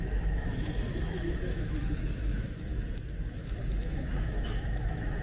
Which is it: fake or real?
fake